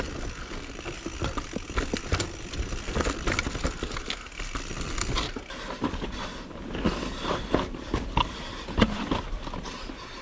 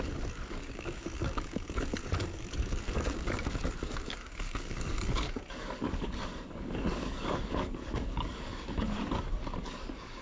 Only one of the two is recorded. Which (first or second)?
first